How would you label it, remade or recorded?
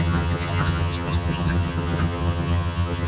remade